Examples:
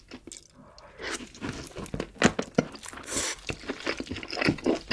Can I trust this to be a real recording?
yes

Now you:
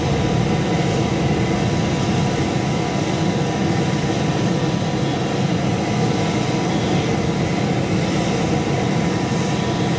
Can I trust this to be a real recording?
yes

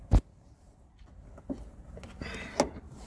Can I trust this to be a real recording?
yes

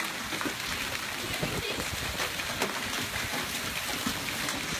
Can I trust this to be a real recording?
yes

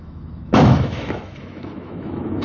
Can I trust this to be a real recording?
no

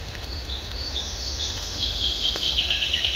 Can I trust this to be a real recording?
no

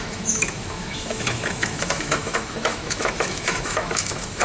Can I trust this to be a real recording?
no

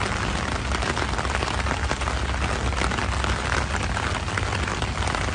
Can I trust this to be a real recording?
yes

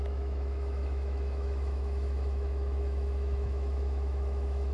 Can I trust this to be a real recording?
no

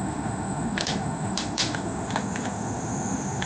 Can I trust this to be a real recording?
no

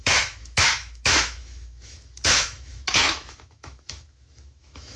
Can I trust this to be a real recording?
no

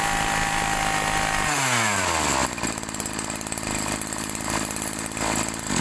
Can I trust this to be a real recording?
yes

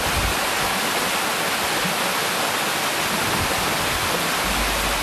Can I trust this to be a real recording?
yes